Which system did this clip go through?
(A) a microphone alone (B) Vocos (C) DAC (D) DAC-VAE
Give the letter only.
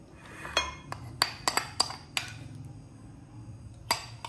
A